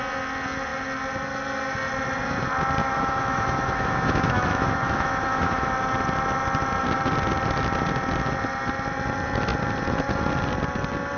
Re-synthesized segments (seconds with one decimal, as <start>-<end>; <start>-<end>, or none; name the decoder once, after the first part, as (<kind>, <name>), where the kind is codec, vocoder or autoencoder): 2.8-5.7 (autoencoder, DAC-VAE)